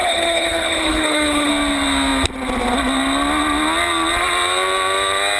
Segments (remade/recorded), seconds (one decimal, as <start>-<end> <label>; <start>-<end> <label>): 0.0-1.5 remade; 1.5-5.4 recorded